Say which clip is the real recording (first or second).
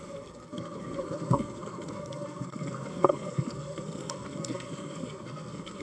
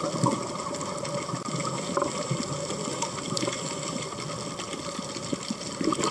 second